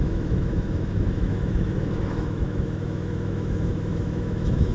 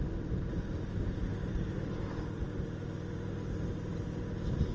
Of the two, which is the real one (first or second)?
second